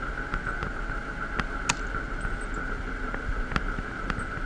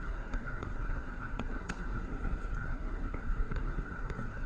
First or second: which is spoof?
second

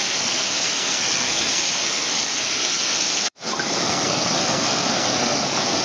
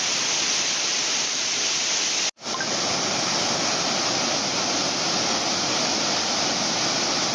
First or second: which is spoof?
first